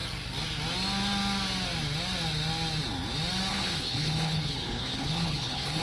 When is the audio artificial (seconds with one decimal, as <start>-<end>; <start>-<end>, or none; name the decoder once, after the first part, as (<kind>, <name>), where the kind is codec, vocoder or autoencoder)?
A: 3.5-5.8 (codec, HILCodec)